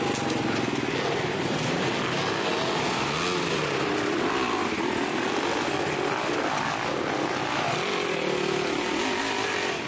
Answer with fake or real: real